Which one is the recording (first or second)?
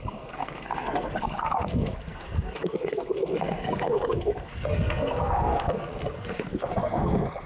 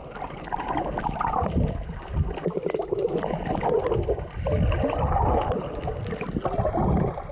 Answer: second